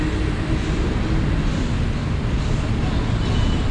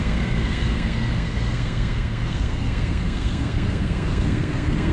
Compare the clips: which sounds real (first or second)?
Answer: first